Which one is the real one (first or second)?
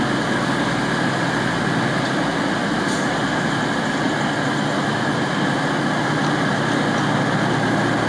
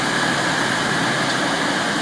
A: first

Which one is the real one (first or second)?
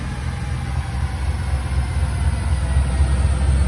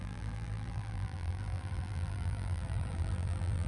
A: first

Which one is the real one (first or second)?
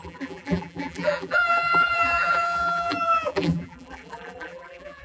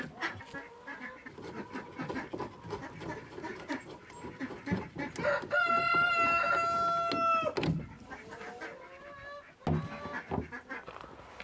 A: second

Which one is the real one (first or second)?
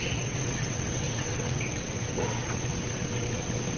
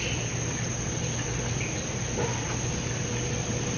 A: second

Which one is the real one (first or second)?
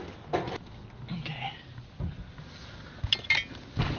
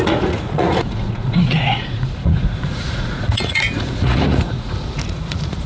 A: first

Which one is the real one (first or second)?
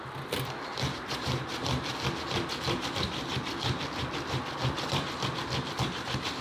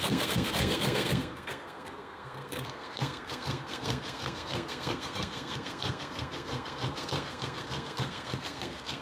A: first